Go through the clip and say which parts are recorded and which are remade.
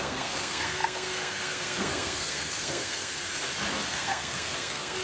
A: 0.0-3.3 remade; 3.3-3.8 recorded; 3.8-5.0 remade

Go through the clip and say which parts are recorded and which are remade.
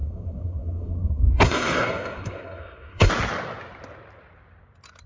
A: 0.0-3.1 remade; 3.1-5.1 recorded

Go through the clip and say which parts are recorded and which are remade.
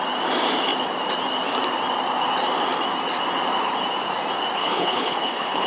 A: 0.0-4.6 recorded; 4.6-5.7 remade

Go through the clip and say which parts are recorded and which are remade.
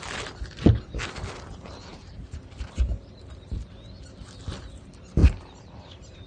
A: 0.0-1.9 recorded; 1.9-3.7 remade; 3.7-5.2 recorded; 5.2-6.3 remade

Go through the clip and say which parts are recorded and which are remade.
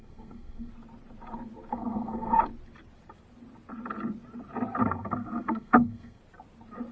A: 0.0-0.7 remade; 0.7-1.7 recorded; 1.7-2.4 remade; 2.4-4.8 recorded; 4.8-6.2 remade; 6.2-6.9 recorded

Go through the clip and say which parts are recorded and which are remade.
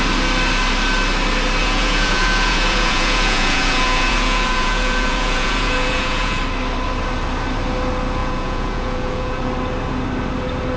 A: 0.0-1.6 recorded; 1.6-6.4 remade; 6.4-8.2 recorded; 8.2-9.5 remade; 9.5-10.8 recorded